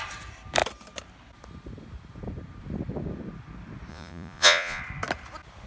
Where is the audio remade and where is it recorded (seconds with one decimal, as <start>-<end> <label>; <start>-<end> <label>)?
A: 0.0-3.9 recorded; 3.9-4.8 remade; 4.8-5.7 recorded